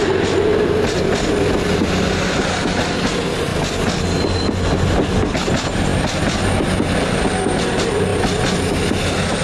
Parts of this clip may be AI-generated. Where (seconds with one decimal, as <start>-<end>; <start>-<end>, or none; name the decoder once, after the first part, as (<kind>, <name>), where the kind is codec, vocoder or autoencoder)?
none